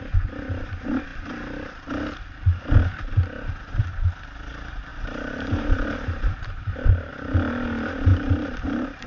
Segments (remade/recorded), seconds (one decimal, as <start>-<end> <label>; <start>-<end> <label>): 0.0-4.9 recorded; 4.9-7.1 remade; 7.1-8.1 recorded; 8.1-9.1 remade

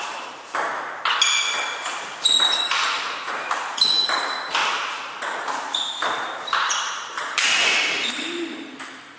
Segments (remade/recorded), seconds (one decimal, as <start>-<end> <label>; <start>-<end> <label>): 0.0-1.4 remade; 1.4-2.4 recorded; 2.4-9.2 remade

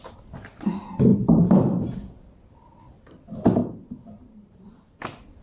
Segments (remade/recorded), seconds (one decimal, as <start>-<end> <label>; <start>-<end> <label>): 0.0-1.1 recorded; 1.1-2.3 remade; 2.3-3.6 recorded; 3.6-5.0 remade; 5.0-5.4 recorded

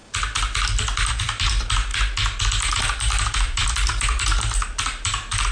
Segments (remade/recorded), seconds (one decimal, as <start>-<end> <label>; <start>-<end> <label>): 0.0-1.1 recorded; 1.1-1.9 remade; 1.9-2.8 recorded; 2.8-5.5 remade

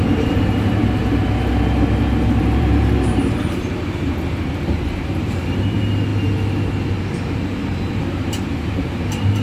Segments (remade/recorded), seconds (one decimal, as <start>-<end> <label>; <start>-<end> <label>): 0.0-1.0 remade; 1.0-2.4 recorded; 2.4-6.1 remade; 6.1-8.0 recorded; 8.0-9.4 remade

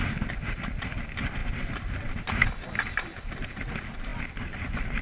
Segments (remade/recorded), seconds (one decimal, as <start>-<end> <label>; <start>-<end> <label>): 0.0-4.1 recorded; 4.1-5.0 remade